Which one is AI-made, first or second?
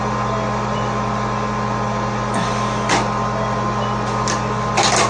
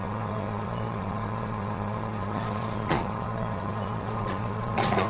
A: second